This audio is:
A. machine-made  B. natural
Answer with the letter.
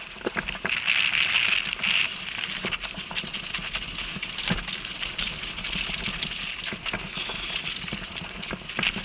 B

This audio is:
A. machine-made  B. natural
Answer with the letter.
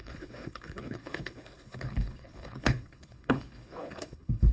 A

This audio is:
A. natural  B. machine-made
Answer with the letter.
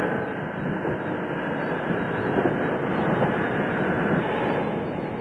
A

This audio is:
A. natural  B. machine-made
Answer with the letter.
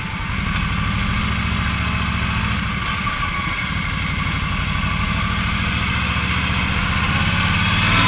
A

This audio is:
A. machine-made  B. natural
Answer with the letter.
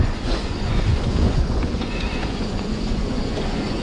A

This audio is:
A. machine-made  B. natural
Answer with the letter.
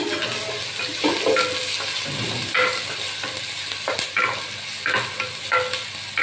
B